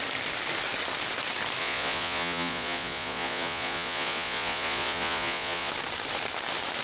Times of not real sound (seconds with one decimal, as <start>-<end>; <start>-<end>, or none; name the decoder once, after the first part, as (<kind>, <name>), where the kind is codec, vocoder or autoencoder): 1.6-5.7 (vocoder, Vocos)